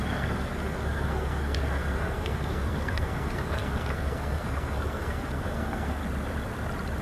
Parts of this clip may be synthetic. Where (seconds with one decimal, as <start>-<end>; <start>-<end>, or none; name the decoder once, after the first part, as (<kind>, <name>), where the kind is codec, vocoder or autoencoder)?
0.0-6.0 (codec, SNAC)